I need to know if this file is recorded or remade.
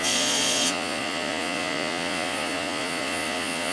remade